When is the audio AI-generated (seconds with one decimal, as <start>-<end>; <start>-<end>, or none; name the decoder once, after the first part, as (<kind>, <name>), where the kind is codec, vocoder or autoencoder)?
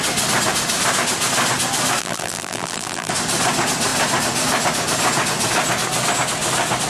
2.0-3.1 (vocoder, BigVGAN v2)